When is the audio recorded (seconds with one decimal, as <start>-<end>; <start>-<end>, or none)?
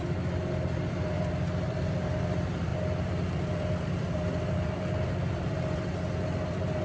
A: none